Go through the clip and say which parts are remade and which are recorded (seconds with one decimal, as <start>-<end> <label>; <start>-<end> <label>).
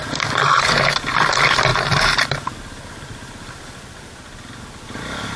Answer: 0.0-5.4 recorded